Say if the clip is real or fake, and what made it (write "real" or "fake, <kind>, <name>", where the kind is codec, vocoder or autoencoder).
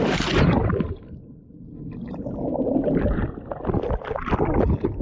real